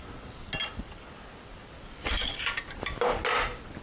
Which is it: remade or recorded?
recorded